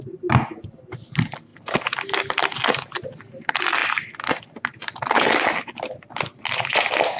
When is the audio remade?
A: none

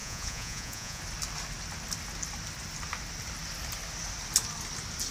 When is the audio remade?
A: 0.0-1.0 (vocoder, Vocos)

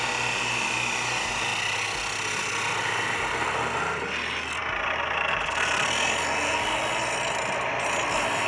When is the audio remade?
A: none

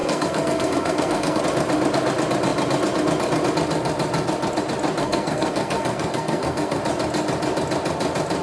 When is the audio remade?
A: 0.0-1.4 (codec, SNAC); 5.0-6.8

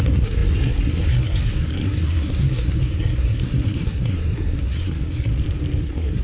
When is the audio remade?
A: 0.0-5.3 (codec, SNAC); 5.8-6.2

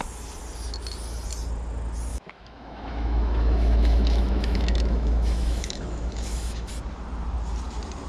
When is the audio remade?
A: 2.1-6.7 (autoencoder, DAC-VAE)

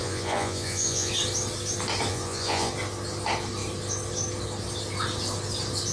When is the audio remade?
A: 0.0-1.1 (vocoder, Vocos); 2.1-2.7

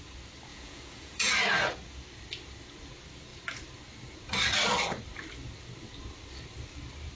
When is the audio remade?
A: 0.5-1.3 (vocoder, Vocos)